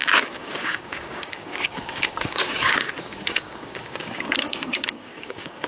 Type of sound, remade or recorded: remade